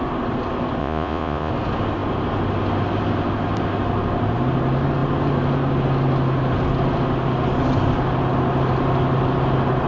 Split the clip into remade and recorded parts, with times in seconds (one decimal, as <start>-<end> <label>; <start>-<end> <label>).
0.0-0.8 recorded; 0.8-1.5 remade; 1.5-9.9 recorded